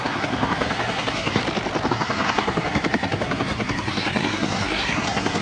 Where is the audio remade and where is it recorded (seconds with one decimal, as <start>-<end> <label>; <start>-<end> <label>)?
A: 0.0-1.4 remade; 1.4-1.9 recorded; 1.9-5.4 remade